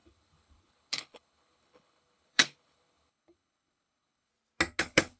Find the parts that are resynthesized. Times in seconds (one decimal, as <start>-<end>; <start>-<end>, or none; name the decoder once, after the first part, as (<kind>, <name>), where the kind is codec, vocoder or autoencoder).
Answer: 0.0-4.3 (codec, HILCodec); 4.8-5.2